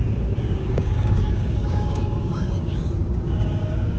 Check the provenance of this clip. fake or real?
fake